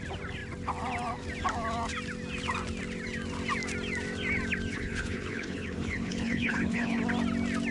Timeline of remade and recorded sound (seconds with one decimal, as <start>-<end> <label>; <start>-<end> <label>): 0.0-4.7 recorded; 4.7-7.0 remade; 7.0-7.7 recorded